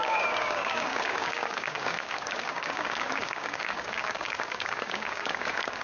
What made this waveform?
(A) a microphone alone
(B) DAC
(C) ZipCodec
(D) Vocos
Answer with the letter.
B